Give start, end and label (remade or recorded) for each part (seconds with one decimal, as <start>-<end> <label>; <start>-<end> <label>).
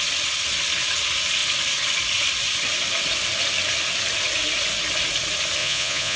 0.0-5.6 recorded; 5.6-6.2 remade